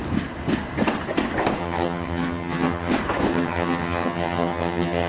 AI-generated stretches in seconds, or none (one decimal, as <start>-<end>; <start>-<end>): 1.6-2.9; 3.3-5.1